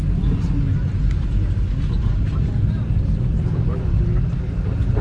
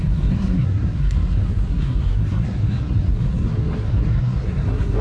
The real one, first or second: first